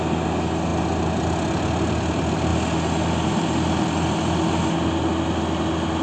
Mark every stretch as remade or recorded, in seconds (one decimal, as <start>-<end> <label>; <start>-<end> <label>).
0.0-6.0 recorded